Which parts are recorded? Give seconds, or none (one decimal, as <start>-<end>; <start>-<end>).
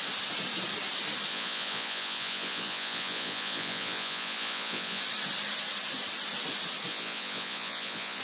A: 0.0-1.3; 5.0-6.9